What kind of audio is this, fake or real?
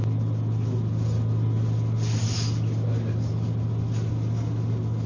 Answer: real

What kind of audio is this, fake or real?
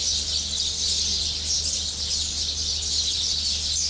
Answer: real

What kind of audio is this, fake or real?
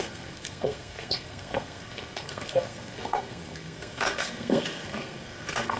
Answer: fake